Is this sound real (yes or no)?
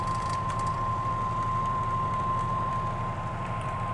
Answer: no